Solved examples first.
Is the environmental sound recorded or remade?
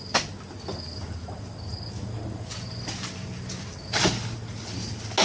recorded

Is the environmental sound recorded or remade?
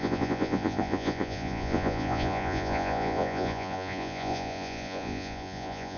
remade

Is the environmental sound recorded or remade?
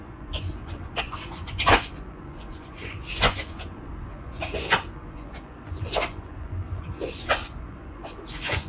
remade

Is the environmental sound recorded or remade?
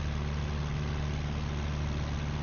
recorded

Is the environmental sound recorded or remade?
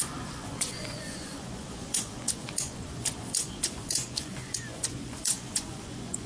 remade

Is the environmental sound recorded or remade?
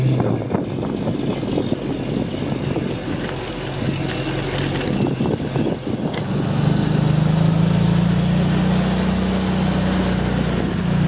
recorded